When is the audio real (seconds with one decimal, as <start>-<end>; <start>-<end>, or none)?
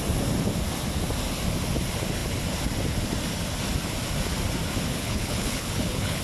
0.0-4.9